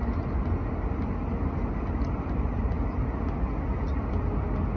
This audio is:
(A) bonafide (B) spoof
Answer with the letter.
A